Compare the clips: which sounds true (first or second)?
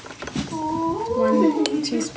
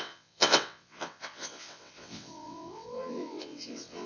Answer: first